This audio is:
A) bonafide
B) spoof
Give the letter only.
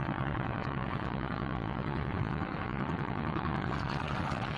B